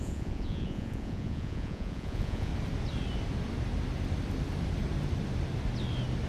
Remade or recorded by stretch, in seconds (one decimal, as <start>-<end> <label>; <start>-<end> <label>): 0.0-2.5 remade; 2.5-6.3 recorded